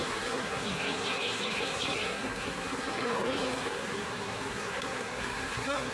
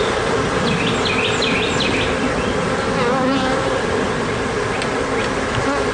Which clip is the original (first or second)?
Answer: second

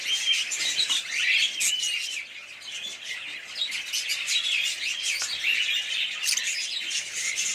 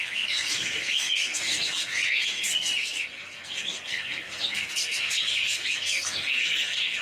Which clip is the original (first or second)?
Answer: first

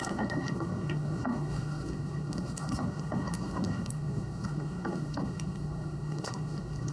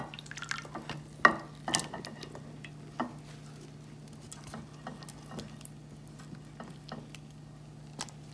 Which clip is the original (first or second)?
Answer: second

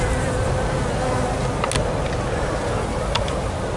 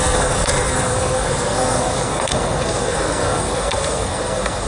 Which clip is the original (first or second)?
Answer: first